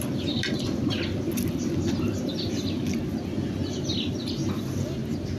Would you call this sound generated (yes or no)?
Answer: no